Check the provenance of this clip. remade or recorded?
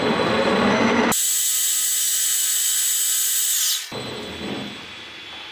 recorded